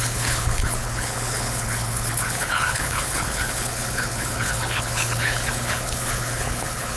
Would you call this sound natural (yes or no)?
no